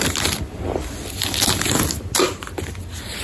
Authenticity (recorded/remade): recorded